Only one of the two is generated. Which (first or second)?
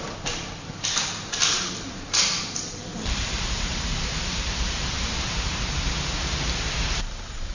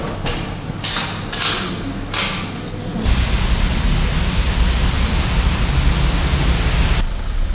first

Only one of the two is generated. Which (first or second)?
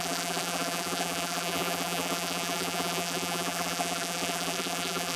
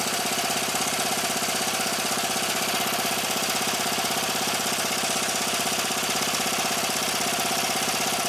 first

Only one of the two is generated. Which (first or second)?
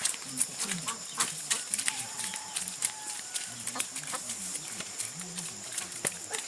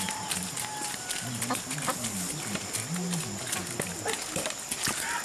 first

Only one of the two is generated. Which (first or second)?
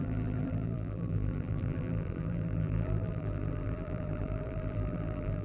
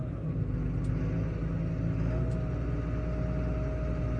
first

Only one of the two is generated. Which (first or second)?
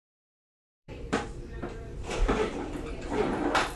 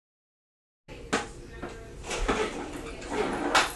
first